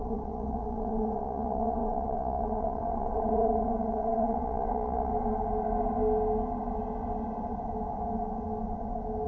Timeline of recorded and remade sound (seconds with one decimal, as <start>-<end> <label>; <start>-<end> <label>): 0.0-5.1 remade; 5.1-9.3 recorded